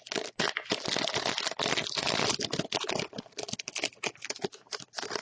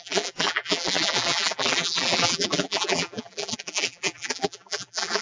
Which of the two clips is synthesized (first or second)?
second